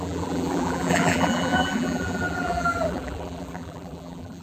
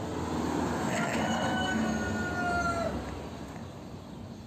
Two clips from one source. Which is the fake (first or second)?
first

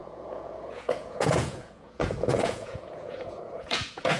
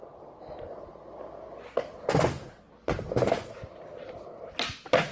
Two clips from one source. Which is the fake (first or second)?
first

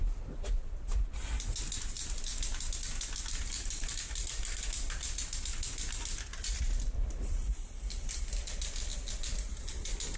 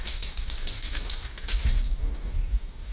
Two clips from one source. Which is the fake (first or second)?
second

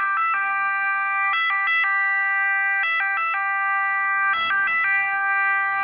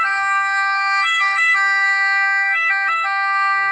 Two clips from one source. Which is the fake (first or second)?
second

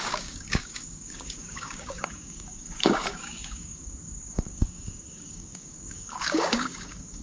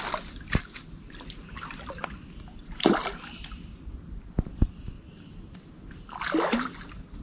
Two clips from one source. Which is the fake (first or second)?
first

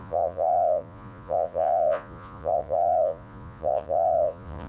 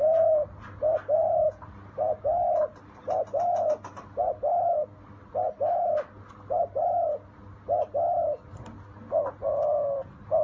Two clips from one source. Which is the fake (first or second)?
first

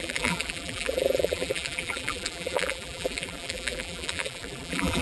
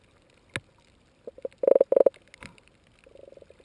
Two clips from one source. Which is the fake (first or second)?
first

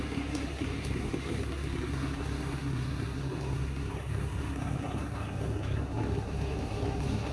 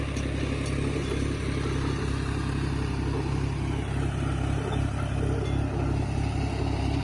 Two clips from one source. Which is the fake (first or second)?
first